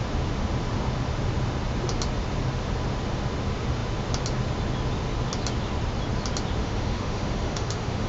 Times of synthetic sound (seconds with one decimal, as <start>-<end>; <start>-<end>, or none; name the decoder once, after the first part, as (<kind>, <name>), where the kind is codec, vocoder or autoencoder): 6.6-8.1 (autoencoder, DAC-VAE)